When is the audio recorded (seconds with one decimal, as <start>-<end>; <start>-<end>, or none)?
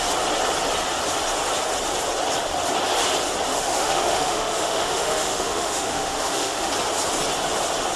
0.0-3.5; 6.7-8.0